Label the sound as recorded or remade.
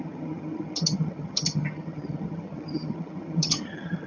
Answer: remade